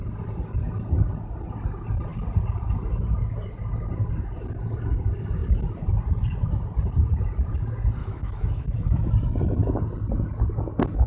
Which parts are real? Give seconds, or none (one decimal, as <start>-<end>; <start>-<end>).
0.0-8.0; 9.1-11.1